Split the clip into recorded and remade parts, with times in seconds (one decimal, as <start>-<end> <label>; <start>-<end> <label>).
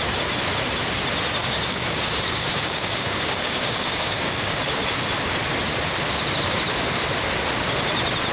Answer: 0.0-1.4 recorded; 1.4-4.6 remade; 4.6-8.3 recorded